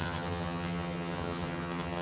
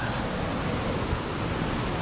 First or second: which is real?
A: second